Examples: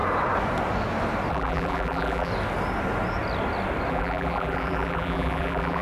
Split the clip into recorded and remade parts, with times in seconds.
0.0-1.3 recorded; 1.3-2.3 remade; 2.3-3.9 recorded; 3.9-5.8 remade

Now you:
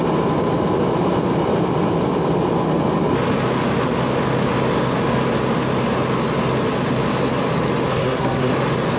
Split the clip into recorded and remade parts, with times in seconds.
0.0-7.9 recorded; 7.9-8.5 remade; 8.5-9.0 recorded

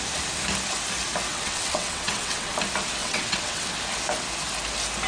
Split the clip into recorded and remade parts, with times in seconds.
0.0-1.3 recorded; 1.3-2.5 remade; 2.5-3.0 recorded; 3.0-3.7 remade; 3.7-5.1 recorded

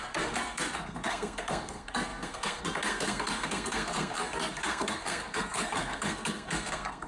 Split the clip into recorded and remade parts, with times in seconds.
0.0-7.1 remade

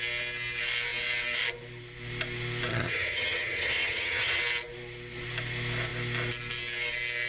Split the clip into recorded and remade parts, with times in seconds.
0.0-2.7 recorded; 2.7-4.4 remade; 4.4-7.3 recorded

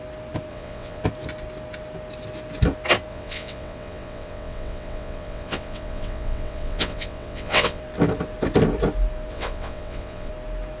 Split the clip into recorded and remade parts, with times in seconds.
0.0-0.5 recorded; 0.5-1.0 remade; 1.0-3.1 recorded; 3.1-7.8 remade; 7.8-9.3 recorded; 9.3-10.3 remade; 10.3-10.8 recorded